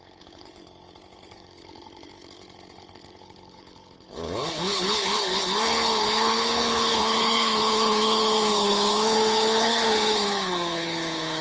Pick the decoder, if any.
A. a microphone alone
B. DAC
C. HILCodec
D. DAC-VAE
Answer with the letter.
C